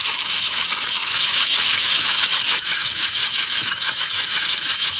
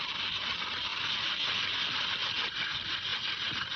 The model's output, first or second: first